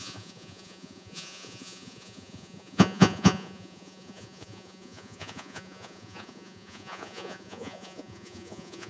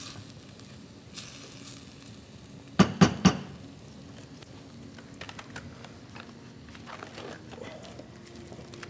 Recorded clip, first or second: second